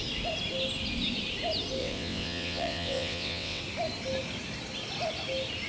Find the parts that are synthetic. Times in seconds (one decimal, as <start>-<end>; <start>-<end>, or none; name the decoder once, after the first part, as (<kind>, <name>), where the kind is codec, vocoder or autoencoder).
1.8-3.6 (vocoder, WaveNeXt)